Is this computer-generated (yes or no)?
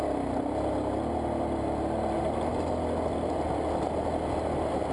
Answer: no